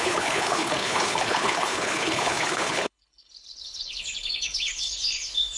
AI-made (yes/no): yes